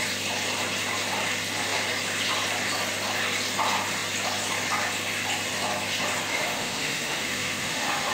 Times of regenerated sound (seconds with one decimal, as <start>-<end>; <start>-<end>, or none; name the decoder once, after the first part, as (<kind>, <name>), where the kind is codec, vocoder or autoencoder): 6.3-8.1 (autoencoder, DAC-VAE)

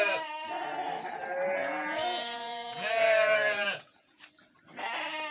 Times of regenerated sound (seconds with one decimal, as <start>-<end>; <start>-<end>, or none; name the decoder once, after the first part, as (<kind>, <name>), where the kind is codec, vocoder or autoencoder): 1.6-4.2 (vocoder, Vocos)

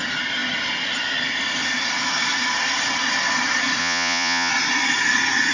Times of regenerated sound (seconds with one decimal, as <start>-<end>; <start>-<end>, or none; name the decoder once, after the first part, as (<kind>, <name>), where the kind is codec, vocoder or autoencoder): 3.8-4.5 (vocoder, Vocos)

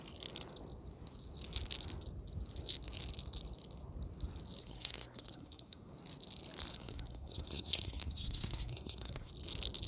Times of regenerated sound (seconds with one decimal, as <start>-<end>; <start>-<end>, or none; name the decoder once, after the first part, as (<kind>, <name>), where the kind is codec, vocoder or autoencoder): 4.6-5.9 (codec, SNAC); 6.7-9.3

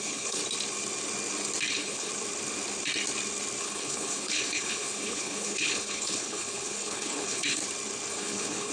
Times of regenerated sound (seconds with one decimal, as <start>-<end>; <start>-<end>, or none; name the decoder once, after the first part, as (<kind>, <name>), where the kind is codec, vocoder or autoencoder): 0.0-0.4 (codec, HILCodec); 1.7-2.1; 3.6-7.6; 8.1-8.7